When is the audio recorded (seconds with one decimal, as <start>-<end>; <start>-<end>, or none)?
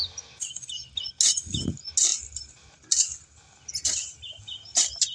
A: 0.0-5.1